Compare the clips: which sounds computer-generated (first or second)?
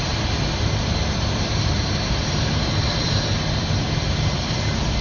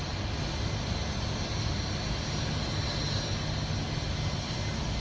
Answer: first